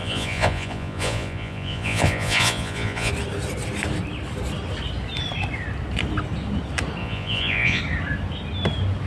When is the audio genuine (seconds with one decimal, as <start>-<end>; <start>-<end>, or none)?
3.1-7.0; 7.8-9.1